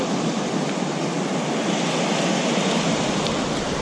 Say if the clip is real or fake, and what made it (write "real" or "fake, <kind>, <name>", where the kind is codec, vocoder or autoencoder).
real